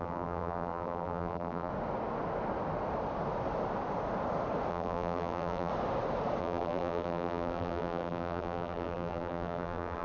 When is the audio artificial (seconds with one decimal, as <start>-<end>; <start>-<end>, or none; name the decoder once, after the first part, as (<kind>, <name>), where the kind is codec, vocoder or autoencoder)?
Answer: 0.0-1.7 (vocoder, BigVGAN v2); 4.7-5.7; 6.4-10.0